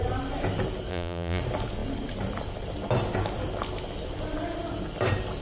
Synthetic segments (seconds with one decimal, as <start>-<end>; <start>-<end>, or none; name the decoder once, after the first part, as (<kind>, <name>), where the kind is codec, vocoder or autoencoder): 0.9-1.4 (vocoder, BigVGAN v2)